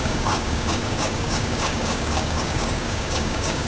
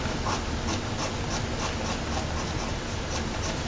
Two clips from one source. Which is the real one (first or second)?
second